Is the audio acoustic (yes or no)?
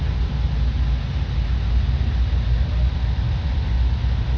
yes